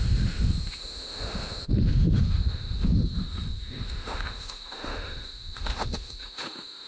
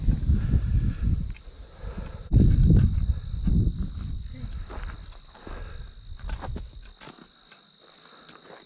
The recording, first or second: second